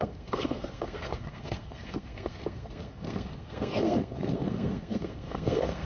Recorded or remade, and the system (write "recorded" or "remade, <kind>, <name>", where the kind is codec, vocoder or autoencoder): remade, codec, SNAC